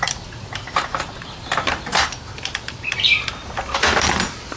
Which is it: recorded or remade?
remade